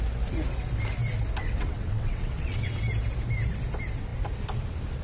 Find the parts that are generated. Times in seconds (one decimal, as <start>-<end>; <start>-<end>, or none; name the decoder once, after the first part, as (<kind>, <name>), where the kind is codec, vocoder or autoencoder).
1.4-2.8 (vocoder, WaveNeXt)